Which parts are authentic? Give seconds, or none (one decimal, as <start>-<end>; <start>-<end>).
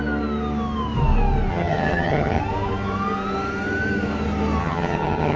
0.0-1.5; 2.4-4.6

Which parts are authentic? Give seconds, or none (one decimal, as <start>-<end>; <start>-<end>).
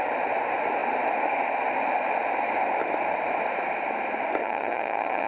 0.0-4.4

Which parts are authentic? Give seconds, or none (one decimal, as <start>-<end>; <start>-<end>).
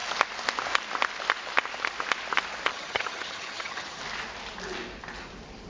0.0-2.7; 4.0-5.7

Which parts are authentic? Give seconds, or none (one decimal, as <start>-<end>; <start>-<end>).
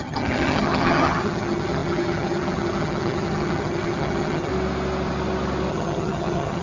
4.5-5.7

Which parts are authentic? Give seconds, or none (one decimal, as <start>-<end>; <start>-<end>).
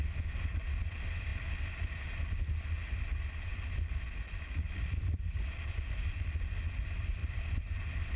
0.0-8.2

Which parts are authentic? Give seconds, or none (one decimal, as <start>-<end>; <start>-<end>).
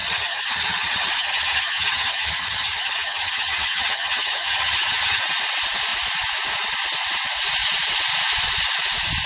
5.2-9.3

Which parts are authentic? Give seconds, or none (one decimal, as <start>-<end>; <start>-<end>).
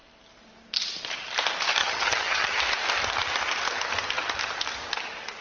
0.0-1.8; 2.6-5.4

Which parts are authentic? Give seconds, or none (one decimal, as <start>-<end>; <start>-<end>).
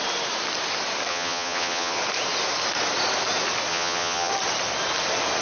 0.0-1.1; 2.0-3.7; 4.3-5.4